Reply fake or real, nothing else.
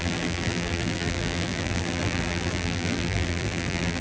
fake